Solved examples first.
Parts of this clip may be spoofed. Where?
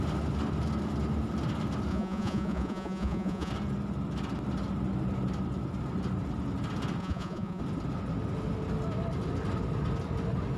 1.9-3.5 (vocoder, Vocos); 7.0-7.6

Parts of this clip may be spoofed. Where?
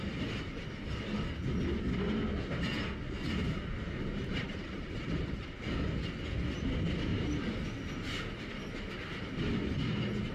3.4-5.5 (vocoder, BigVGAN v2)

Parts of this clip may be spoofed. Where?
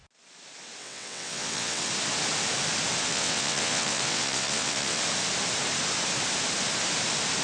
0.8-1.9 (vocoder, WaveNeXt); 3.1-5.0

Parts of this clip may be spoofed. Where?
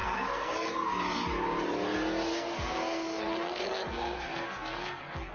0.0-0.7 (codec, SNAC); 2.3-5.3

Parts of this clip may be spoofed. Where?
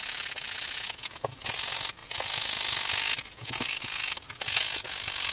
none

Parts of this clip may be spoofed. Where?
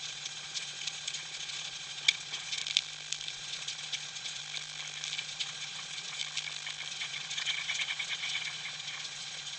0.0-2.6 (vocoder, Vocos); 3.3-4.4; 5.2-6.2; 6.9-9.6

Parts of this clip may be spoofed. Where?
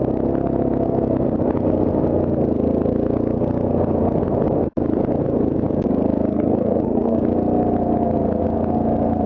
6.3-7.2 (codec, SNAC)